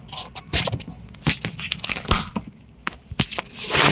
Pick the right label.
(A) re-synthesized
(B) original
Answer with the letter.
B